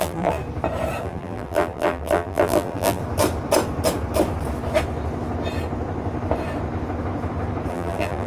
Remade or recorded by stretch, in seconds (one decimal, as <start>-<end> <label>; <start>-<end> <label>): 0.0-0.4 remade; 0.4-1.0 recorded; 1.0-3.0 remade; 3.0-7.7 recorded; 7.7-8.3 remade